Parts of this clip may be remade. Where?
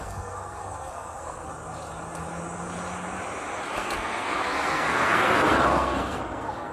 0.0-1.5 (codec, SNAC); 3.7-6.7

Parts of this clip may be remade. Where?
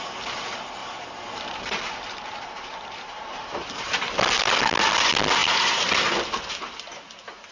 none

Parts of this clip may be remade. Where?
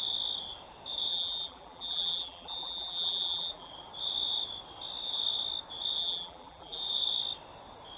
1.1-3.7 (vocoder, BigVGAN v2); 6.0-6.8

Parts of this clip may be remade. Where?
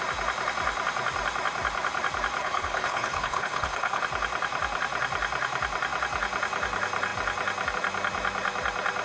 2.4-4.0 (codec, HILCodec)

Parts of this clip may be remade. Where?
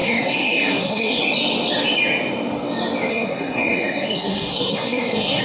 0.0-1.2 (codec, SNAC); 3.1-5.4